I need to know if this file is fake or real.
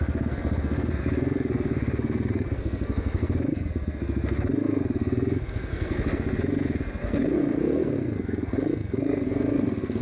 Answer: fake